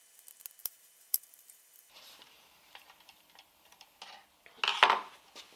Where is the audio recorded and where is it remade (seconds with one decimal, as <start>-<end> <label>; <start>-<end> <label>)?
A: 0.0-0.6 recorded; 0.6-4.0 remade; 4.0-5.6 recorded